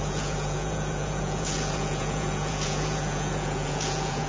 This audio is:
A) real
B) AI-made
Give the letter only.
B